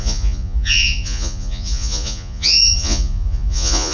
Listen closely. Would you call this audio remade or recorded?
remade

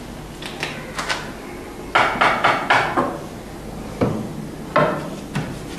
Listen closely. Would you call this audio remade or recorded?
recorded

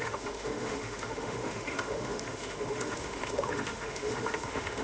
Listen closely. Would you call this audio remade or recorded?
remade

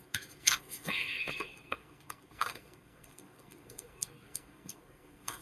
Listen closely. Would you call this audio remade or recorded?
remade